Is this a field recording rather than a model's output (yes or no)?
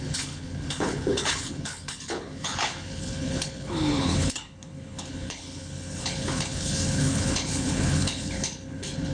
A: no